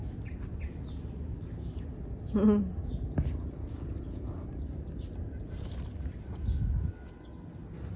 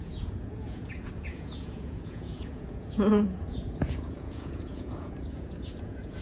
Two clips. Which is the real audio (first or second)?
first